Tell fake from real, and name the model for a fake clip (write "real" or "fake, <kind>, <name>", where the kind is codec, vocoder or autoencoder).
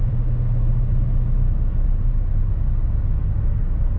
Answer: real